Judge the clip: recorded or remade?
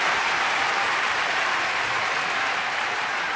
remade